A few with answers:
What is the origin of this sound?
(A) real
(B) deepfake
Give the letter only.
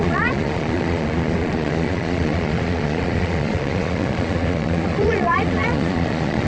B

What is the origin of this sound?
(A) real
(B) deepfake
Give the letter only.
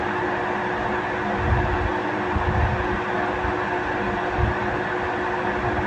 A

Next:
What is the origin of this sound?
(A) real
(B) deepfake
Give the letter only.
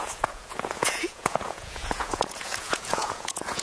B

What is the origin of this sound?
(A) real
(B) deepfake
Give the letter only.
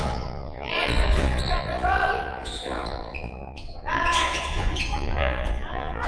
B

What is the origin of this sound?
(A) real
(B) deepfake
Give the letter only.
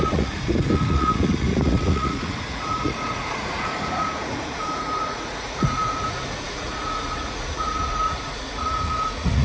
B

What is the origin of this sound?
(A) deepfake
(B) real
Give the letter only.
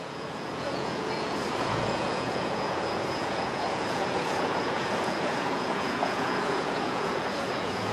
A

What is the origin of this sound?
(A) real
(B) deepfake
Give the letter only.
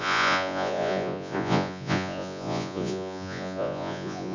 B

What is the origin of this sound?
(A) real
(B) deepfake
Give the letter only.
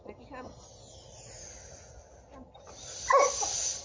A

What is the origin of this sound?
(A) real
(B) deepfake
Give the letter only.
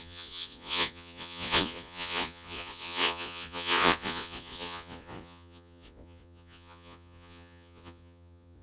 B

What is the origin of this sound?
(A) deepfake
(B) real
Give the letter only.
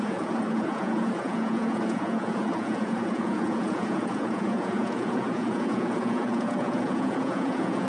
A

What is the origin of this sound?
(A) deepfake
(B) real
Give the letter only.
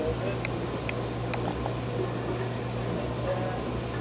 B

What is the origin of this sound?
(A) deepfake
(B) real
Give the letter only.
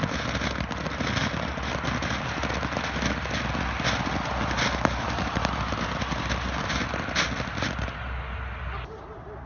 B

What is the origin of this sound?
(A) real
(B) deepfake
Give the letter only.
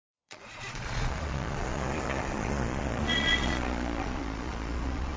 B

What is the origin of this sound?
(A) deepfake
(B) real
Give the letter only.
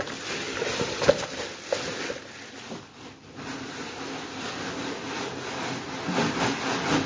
B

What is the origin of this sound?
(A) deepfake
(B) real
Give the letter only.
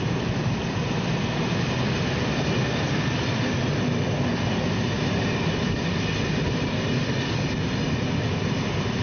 B